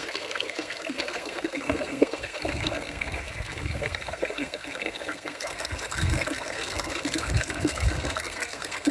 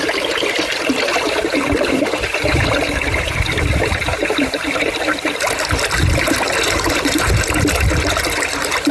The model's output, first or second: first